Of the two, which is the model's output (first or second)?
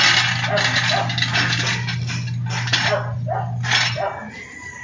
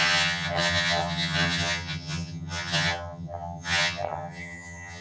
second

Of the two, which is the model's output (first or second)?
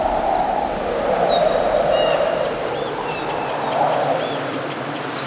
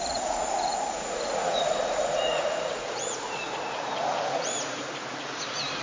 second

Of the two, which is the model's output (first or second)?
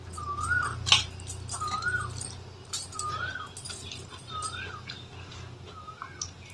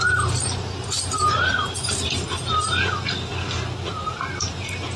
second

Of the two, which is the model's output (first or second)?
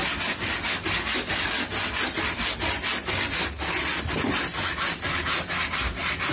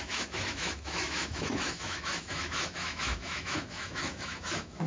second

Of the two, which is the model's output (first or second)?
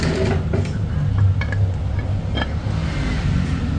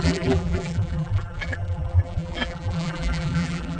second